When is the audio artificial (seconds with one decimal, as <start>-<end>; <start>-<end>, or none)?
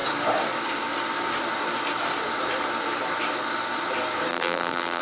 4.3-5.0